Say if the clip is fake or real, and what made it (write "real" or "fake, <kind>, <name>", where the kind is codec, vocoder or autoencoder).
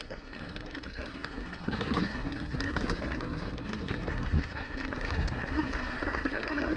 fake, codec, SNAC